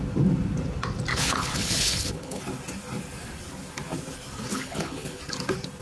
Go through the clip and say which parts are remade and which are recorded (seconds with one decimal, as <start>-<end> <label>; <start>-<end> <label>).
0.0-1.1 recorded; 1.1-2.4 remade; 2.4-4.5 recorded; 4.5-5.2 remade; 5.2-5.8 recorded